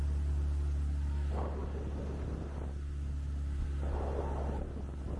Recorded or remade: recorded